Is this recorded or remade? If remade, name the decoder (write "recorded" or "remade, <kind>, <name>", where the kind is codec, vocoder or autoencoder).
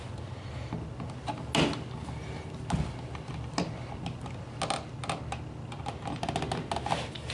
recorded